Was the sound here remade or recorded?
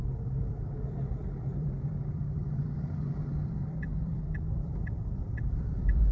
remade